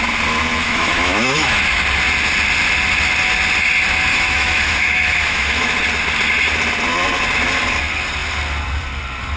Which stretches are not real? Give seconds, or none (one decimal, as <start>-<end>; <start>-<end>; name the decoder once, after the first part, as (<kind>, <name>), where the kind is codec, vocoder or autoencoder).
0.6-1.6 (autoencoder, DAC-VAE); 4.1-5.8